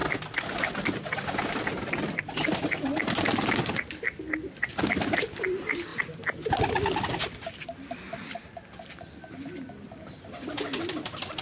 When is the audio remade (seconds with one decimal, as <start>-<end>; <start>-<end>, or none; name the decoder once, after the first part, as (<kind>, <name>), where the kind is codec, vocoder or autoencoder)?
none